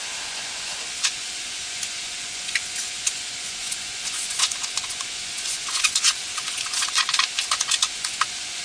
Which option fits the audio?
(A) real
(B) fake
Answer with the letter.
B